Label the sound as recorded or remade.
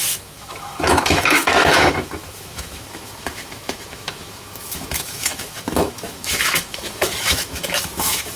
remade